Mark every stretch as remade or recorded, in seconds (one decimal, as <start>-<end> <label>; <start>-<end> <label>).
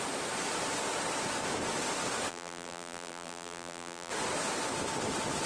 0.0-2.3 recorded; 2.3-4.1 remade; 4.1-5.5 recorded